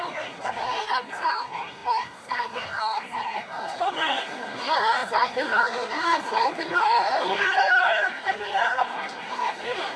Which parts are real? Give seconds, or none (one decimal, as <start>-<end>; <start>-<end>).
none